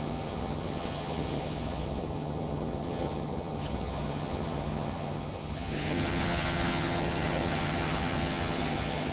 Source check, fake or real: fake